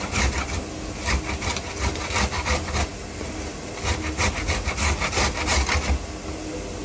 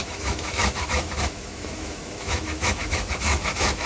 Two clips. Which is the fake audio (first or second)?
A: second